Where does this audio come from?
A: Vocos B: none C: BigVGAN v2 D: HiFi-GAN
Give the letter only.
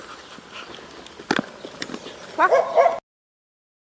B